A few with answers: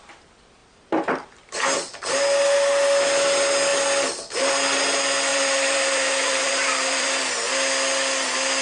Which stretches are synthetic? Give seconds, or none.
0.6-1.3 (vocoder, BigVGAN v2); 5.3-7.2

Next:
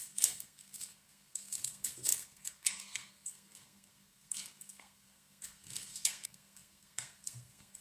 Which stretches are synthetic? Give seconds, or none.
0.0-7.8 (codec, SNAC)